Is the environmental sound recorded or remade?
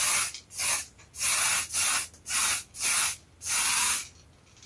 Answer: recorded